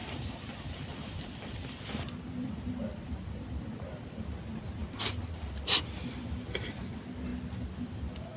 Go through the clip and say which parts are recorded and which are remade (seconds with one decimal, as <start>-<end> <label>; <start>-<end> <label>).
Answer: 0.0-4.2 remade; 4.2-4.8 recorded; 4.8-6.2 remade; 6.2-8.4 recorded